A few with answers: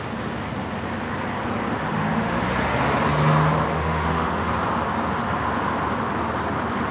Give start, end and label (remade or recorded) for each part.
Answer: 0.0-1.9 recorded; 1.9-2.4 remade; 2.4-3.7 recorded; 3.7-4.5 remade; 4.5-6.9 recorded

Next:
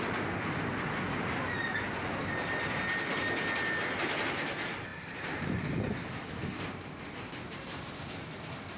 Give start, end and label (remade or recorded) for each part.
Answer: 0.0-4.9 recorded; 4.9-7.9 remade; 7.9-8.8 recorded